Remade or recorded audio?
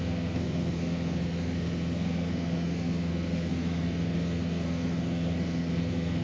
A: remade